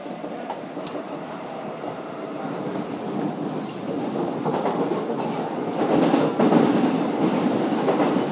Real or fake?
real